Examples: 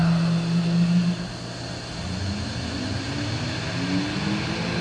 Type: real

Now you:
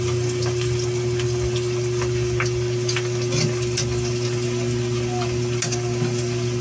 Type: real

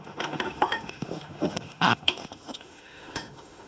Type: fake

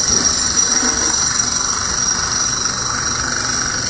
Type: real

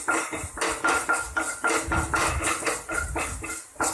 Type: real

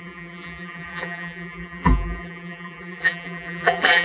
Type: fake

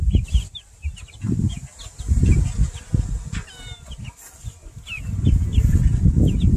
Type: real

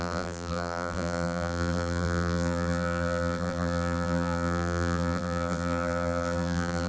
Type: fake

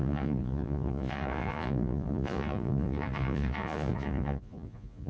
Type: fake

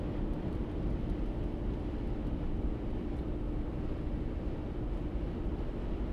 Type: real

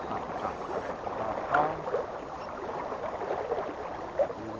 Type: real